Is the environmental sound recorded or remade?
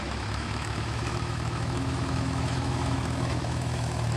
remade